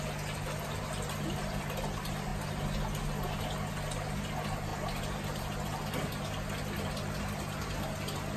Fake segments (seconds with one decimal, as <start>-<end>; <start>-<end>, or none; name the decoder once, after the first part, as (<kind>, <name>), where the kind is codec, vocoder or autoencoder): none

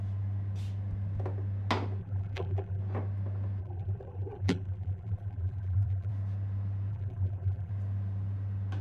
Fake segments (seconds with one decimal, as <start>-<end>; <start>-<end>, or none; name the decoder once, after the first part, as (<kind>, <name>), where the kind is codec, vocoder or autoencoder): 2.0-2.8 (vocoder, BigVGAN v2); 3.6-6.1; 6.9-7.7